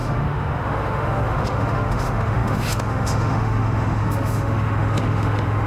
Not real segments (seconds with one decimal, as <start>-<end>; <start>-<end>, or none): 0.0-5.7